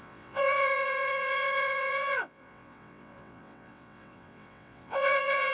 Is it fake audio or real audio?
fake